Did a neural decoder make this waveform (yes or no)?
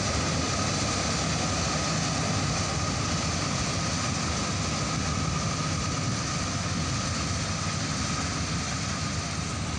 no